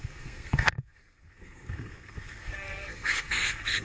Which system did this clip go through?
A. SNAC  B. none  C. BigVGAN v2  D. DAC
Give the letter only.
A